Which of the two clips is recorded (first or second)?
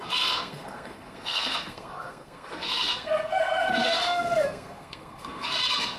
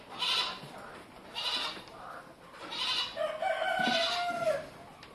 second